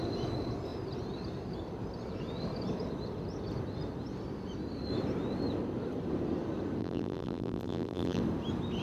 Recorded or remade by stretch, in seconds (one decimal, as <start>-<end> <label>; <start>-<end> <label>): 0.0-6.8 recorded; 6.8-8.2 remade; 8.2-8.8 recorded